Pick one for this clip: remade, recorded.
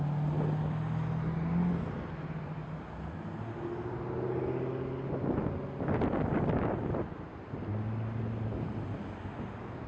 recorded